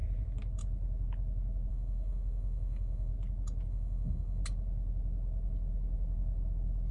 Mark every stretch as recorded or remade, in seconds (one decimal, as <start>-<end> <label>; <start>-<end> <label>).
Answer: 0.0-1.7 recorded; 1.7-3.1 remade; 3.1-3.7 recorded; 3.7-4.4 remade; 4.4-6.9 recorded

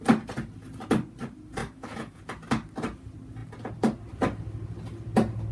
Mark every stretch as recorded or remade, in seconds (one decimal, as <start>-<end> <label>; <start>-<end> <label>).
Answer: 0.0-1.6 recorded; 1.6-2.2 remade; 2.2-5.5 recorded

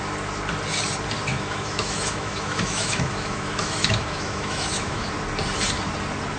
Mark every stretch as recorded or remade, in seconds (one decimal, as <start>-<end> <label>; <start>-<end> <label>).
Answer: 0.0-1.3 recorded; 1.3-5.1 remade; 5.1-6.4 recorded

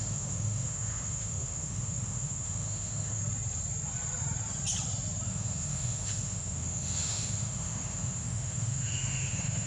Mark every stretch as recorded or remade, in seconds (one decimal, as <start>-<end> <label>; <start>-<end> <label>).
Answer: 0.0-3.2 remade; 3.2-5.3 recorded; 5.3-9.7 remade

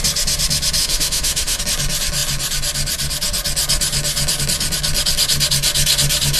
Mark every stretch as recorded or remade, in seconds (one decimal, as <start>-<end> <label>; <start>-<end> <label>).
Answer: 0.0-0.8 recorded; 0.8-1.6 remade; 1.6-6.4 recorded

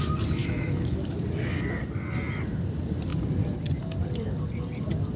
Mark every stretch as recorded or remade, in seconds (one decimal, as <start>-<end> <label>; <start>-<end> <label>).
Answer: 0.0-0.4 recorded; 0.4-1.2 remade; 1.2-5.2 recorded

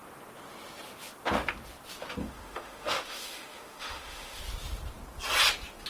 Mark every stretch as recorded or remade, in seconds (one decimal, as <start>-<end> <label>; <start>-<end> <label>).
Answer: 0.0-2.2 recorded; 2.2-4.4 remade; 4.4-5.9 recorded

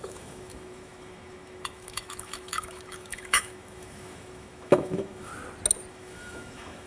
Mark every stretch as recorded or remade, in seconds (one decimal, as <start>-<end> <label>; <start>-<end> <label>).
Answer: 0.0-5.3 remade; 5.3-5.9 recorded; 5.9-6.9 remade